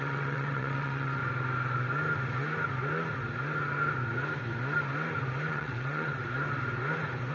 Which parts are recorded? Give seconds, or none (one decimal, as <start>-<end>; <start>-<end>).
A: 1.2-5.5; 6.1-7.3